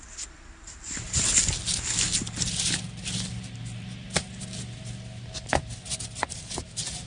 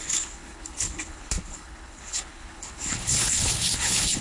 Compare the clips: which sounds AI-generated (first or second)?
second